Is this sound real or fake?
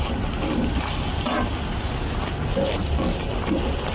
real